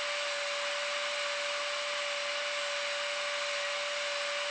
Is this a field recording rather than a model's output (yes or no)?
yes